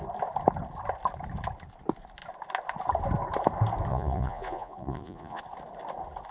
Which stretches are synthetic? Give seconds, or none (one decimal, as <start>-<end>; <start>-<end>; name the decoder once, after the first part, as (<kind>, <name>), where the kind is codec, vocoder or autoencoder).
3.9-5.4 (vocoder, Vocos)

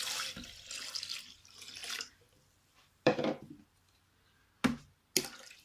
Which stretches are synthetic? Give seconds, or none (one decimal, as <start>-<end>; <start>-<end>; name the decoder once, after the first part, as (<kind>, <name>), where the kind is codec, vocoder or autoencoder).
1.8-3.5 (vocoder, BigVGAN v2)

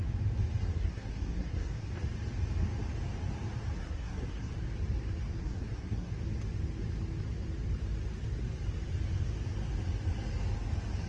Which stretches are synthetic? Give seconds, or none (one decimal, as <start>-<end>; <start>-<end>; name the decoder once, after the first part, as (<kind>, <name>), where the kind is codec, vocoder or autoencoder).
0.6-1.9 (codec, SNAC); 3.8-4.5; 5.4-6.1